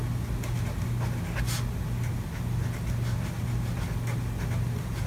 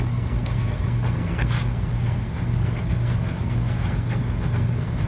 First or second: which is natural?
first